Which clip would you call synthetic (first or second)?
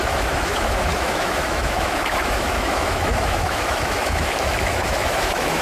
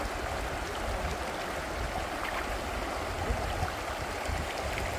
first